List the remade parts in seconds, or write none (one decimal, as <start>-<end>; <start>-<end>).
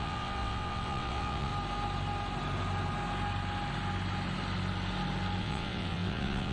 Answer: 0.0-1.5; 5.4-6.5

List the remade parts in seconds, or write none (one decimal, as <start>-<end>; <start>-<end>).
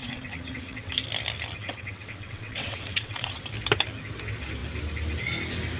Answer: 0.0-0.9; 1.6-3.4